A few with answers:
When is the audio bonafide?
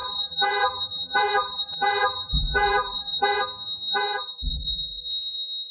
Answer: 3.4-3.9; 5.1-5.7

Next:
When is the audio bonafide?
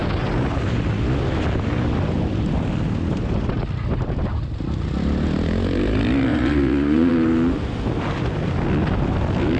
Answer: 0.0-6.3; 7.1-9.6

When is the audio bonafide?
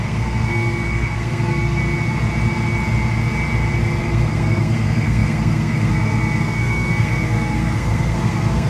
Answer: 1.8-4.0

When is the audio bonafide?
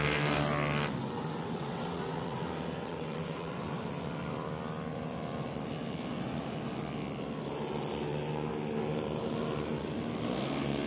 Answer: 0.0-1.0; 2.4-2.8; 3.8-10.9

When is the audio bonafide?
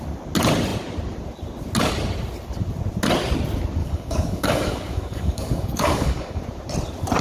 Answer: 0.0-3.8; 6.4-7.2